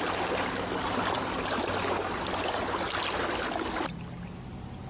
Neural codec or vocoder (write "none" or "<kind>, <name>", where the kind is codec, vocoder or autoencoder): none